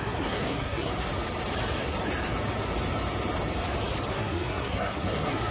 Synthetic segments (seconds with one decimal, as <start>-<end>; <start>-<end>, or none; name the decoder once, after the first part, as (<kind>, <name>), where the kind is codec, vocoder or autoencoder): 0.0-0.9 (codec, SNAC); 4.1-5.5